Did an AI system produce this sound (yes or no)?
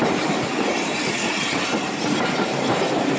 yes